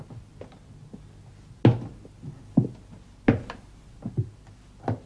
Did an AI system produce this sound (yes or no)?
no